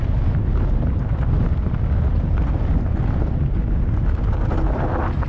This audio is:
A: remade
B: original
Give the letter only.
B